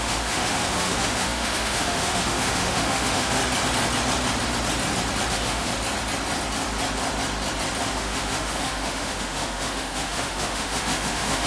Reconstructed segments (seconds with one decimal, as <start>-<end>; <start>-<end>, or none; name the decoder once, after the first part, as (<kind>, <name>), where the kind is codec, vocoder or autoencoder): 0.0-3.4 (autoencoder, DAC-VAE); 5.3-5.7; 7.8-11.5